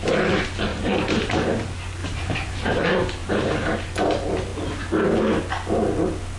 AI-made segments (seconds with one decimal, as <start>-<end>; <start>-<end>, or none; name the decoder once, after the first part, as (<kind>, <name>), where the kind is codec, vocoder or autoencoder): 0.7-1.3 (vocoder, BigVGAN v2); 2.0-2.7; 3.2-3.7